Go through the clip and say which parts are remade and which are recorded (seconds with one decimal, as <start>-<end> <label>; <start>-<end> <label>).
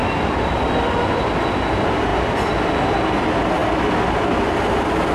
0.0-0.7 remade; 0.7-3.6 recorded; 3.6-4.1 remade; 4.1-5.1 recorded